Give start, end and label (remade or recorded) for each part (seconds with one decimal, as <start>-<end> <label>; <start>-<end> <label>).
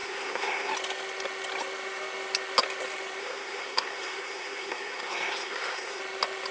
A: 0.0-0.7 remade; 0.7-3.2 recorded; 3.2-6.0 remade; 6.0-6.5 recorded